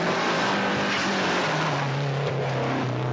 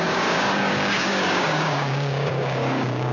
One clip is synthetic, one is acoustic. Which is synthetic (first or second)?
second